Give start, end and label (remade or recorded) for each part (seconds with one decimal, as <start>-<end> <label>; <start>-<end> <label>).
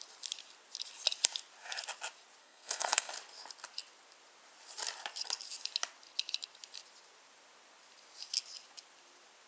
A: 0.0-2.4 recorded; 2.4-3.1 remade; 3.1-9.5 recorded